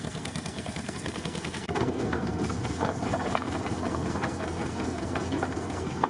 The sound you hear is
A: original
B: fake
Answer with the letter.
B